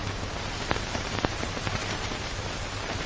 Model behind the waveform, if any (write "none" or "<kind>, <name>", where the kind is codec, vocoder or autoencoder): vocoder, BigVGAN v2